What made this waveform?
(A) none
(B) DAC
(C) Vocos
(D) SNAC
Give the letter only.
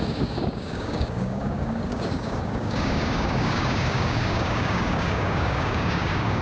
B